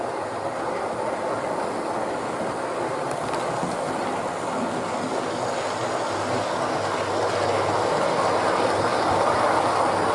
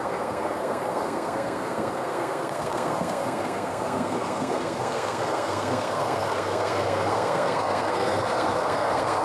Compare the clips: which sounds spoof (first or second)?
second